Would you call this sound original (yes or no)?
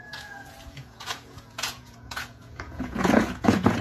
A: no